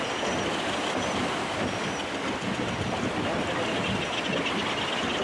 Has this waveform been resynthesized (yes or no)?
no